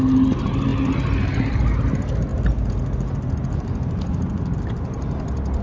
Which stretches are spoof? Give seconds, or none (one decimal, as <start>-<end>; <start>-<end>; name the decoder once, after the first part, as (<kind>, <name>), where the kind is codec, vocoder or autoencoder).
2.3-4.7 (vocoder, BigVGAN v2)